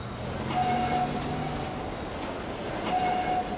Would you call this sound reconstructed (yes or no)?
no